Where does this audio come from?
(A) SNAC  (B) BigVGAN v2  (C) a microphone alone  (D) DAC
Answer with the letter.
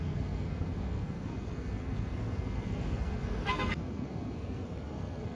A